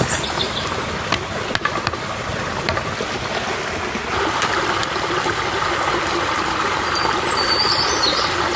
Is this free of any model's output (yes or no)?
yes